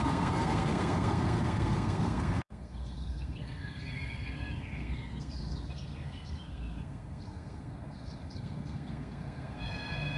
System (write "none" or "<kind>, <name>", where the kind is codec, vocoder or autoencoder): codec, SNAC